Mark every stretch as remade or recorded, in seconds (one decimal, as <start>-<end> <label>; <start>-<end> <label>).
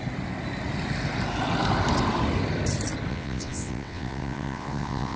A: 0.0-3.1 recorded; 3.1-5.2 remade